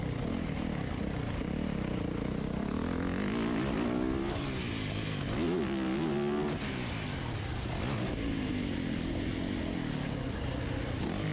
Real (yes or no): yes